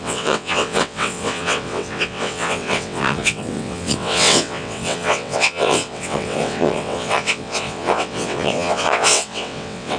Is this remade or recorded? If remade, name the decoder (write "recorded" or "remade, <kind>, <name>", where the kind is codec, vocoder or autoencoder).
remade, vocoder, WaveNeXt